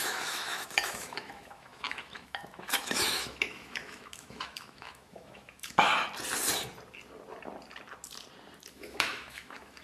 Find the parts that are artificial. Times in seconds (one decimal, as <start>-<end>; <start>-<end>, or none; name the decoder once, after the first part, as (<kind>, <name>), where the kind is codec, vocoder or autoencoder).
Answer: 0.0-5.9 (autoencoder, DAC-VAE); 8.7-9.8